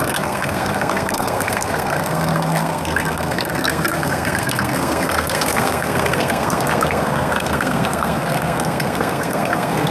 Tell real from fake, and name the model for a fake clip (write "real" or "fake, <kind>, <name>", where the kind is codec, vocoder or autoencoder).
fake, codec, SNAC